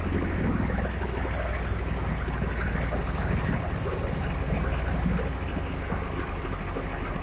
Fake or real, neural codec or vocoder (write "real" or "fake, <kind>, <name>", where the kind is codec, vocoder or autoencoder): real